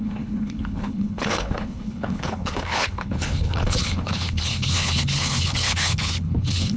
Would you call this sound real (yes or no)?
no